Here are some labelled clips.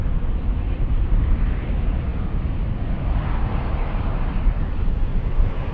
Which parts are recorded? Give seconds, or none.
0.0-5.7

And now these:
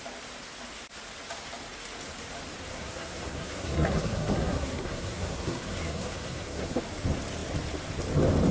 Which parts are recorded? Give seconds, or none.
0.0-2.7; 6.8-8.5

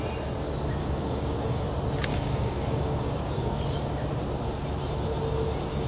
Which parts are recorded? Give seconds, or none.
0.0-0.8; 1.6-2.1; 3.6-5.9

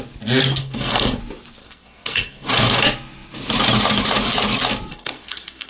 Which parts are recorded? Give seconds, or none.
0.0-0.6; 1.2-1.6; 2.5-4.9

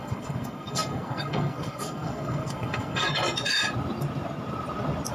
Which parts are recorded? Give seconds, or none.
3.1-5.1

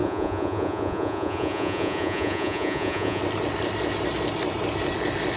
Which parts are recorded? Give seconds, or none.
3.2-5.4

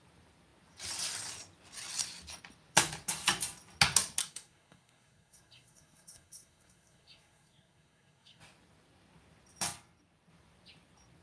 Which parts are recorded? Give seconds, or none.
0.0-4.2; 8.4-11.2

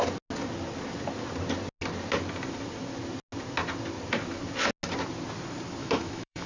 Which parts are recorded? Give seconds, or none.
0.0-5.8